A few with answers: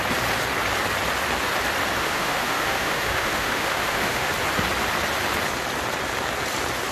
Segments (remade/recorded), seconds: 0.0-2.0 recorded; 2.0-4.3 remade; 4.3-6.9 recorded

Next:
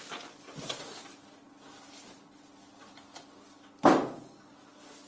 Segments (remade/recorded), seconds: 0.0-5.1 recorded

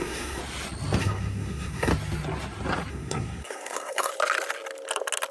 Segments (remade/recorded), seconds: 0.0-0.4 remade; 0.4-1.0 recorded; 1.0-1.9 remade; 1.9-2.9 recorded; 2.9-4.1 remade; 4.1-5.3 recorded

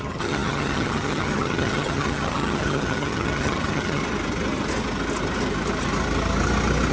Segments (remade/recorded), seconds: 0.0-4.0 remade; 4.0-6.9 recorded

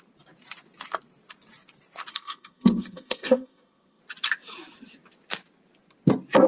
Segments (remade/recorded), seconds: 0.0-2.1 recorded; 2.1-4.0 remade; 4.0-6.5 recorded

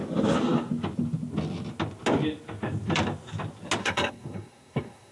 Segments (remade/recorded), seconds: 0.0-3.8 recorded; 3.8-5.1 remade

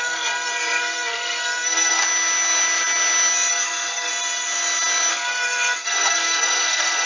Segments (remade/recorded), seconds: 0.0-2.0 remade; 2.0-3.5 recorded; 3.5-4.1 remade; 4.1-5.1 recorded; 5.1-7.1 remade